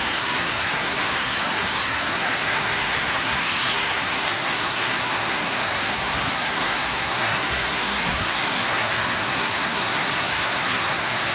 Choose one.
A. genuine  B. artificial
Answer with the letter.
B